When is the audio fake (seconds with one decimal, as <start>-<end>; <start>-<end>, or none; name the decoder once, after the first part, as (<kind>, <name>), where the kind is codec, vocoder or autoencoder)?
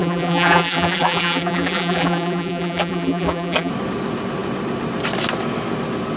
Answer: 0.0-3.7 (vocoder, BigVGAN v2)